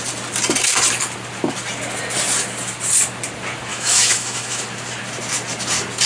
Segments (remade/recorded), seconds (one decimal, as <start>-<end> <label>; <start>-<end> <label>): 0.0-3.7 recorded; 3.7-4.6 remade; 4.6-6.1 recorded